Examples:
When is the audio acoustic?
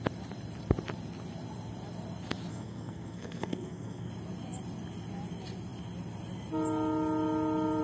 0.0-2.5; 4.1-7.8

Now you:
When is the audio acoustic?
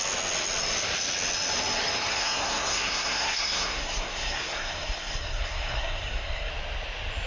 0.0-2.1; 6.5-7.3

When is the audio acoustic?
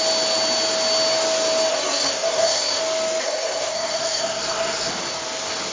0.0-1.7; 2.8-3.2; 4.9-5.7